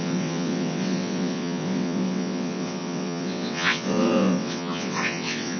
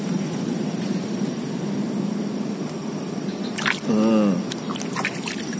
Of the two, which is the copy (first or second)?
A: first